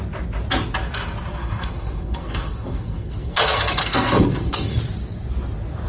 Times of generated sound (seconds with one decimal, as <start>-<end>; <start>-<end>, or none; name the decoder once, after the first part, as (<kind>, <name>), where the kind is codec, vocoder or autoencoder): 1.3-4.8 (codec, SNAC)